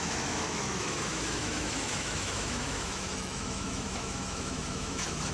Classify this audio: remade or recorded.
remade